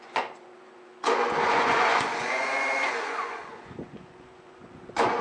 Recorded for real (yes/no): no